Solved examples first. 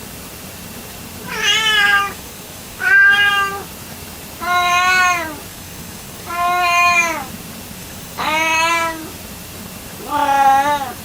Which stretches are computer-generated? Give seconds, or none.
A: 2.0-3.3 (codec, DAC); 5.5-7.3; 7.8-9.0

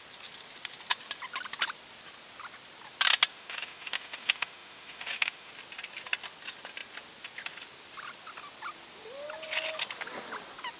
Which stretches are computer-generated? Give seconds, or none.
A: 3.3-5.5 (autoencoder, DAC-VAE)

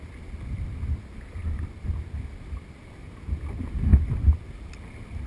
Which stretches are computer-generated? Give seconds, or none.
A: none